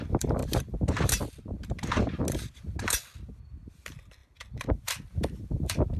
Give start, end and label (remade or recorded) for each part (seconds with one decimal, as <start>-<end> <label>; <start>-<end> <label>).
0.0-0.4 remade; 0.4-3.7 recorded; 3.7-6.0 remade